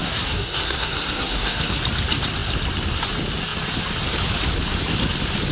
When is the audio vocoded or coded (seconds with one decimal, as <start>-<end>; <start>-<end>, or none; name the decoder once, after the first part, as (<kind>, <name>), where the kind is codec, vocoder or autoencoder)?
0.0-1.8 (codec, SNAC)